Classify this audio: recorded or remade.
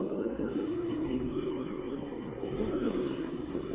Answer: remade